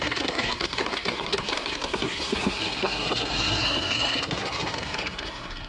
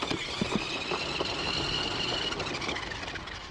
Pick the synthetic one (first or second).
first